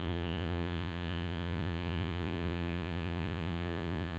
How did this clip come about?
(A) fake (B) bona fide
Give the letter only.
A